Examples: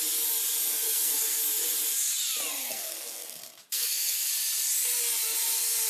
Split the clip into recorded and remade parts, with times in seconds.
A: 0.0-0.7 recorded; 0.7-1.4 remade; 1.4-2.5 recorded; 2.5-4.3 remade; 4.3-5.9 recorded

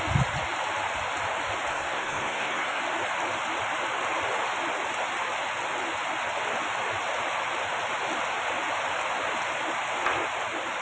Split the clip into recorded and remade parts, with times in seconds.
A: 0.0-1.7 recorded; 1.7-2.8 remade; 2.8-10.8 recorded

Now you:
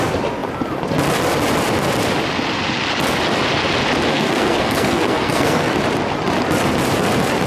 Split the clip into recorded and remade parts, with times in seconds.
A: 0.0-4.1 recorded; 4.1-5.8 remade; 5.8-7.5 recorded

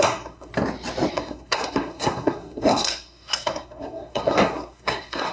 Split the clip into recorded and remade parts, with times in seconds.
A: 0.0-0.5 remade; 0.5-1.1 recorded; 1.1-5.3 remade

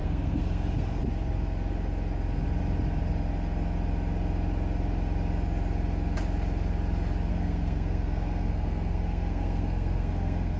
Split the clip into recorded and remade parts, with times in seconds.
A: 0.0-1.0 remade; 1.0-7.3 recorded; 7.3-10.6 remade

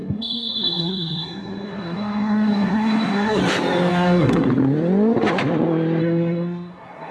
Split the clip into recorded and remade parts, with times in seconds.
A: 0.0-3.4 remade; 3.4-3.9 recorded; 3.9-4.5 remade; 4.5-6.0 recorded; 6.0-7.1 remade